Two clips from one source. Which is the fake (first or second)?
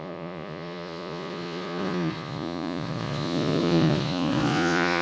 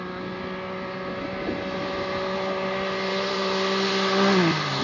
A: first